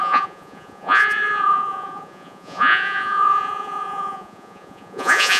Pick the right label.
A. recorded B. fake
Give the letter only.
B